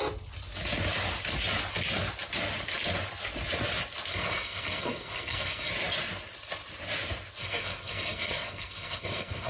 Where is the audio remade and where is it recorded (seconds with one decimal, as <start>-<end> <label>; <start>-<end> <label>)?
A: 0.0-4.1 recorded; 4.1-5.7 remade; 5.7-7.4 recorded; 7.4-9.5 remade